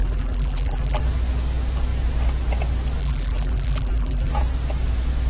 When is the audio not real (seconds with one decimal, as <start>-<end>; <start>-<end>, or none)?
0.0-1.0; 3.0-4.3